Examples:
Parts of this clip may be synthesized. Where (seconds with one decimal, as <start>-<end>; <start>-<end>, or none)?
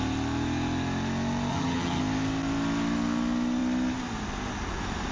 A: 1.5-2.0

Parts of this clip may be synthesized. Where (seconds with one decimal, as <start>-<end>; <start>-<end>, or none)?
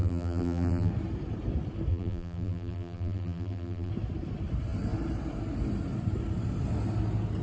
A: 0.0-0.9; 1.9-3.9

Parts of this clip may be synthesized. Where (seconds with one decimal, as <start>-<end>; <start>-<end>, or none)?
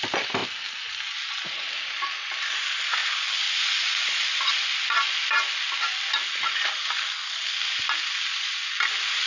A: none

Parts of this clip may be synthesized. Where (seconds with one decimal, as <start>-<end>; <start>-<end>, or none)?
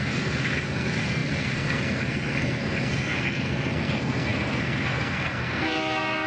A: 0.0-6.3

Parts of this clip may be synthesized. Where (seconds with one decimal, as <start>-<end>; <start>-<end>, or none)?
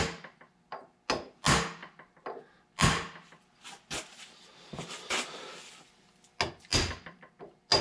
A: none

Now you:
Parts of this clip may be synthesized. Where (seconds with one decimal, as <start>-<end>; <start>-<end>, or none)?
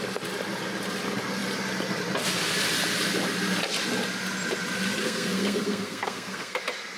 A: 5.0-6.6